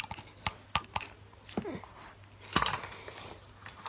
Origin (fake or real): real